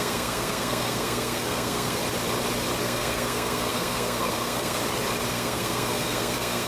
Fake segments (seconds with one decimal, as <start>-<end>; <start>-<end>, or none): 0.0-2.0; 2.8-4.8; 5.3-6.7